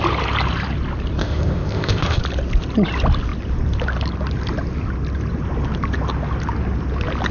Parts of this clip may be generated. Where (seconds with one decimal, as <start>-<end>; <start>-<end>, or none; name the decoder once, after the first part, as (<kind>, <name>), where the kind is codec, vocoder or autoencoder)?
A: 1.2-2.2 (codec, ZipCodec)